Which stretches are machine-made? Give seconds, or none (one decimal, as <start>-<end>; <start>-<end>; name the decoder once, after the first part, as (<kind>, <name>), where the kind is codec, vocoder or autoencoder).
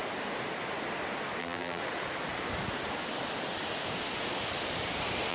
1.4-1.8 (vocoder, BigVGAN v2)